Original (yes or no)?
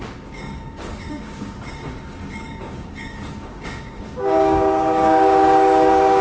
no